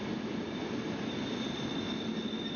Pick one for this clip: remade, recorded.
recorded